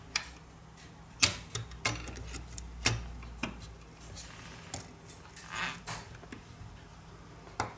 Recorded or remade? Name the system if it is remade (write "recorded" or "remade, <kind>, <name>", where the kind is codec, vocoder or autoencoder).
recorded